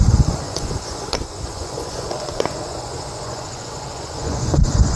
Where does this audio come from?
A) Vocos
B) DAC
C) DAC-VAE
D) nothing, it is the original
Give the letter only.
A